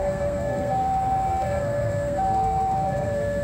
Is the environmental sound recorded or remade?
remade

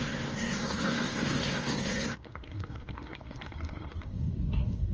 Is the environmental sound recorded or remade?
remade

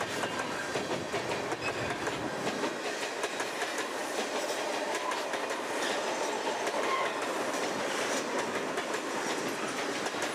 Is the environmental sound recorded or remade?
recorded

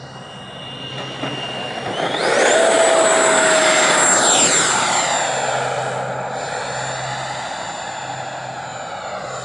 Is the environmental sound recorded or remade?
recorded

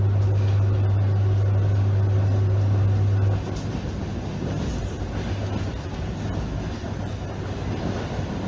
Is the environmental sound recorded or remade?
recorded